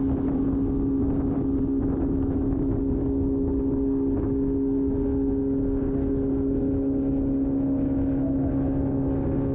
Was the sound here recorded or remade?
recorded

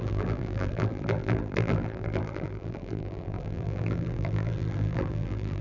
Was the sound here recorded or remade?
remade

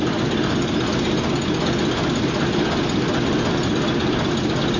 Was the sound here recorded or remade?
recorded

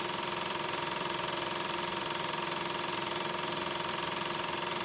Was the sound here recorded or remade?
remade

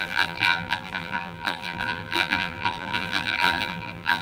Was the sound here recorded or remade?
remade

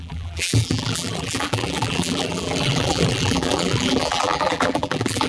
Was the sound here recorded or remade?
remade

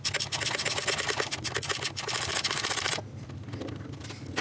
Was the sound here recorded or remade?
recorded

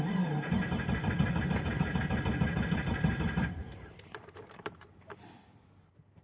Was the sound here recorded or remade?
remade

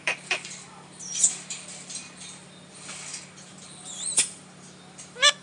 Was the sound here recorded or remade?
remade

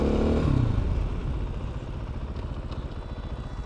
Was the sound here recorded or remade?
recorded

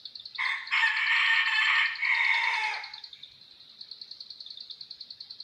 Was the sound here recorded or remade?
recorded